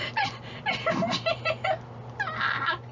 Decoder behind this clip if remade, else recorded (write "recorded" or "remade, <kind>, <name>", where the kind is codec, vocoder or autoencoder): recorded